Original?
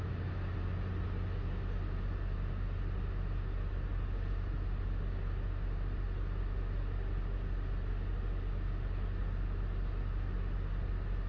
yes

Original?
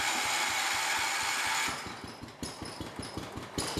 yes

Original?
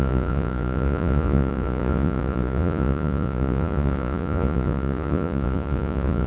no